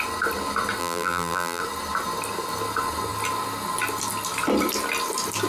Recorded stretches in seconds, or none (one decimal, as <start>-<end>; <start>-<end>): 0.0-0.8; 1.6-5.5